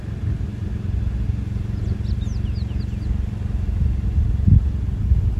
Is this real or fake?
real